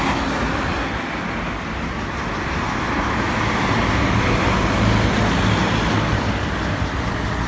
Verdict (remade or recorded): recorded